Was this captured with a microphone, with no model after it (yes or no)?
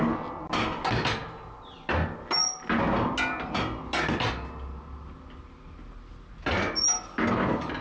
yes